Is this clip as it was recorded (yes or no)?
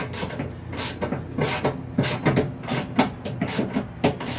yes